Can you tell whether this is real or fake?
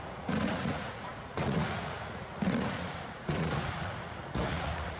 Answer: fake